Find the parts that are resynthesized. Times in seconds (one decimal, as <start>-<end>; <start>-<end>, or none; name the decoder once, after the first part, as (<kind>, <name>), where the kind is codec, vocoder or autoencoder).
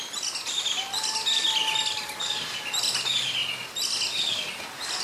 none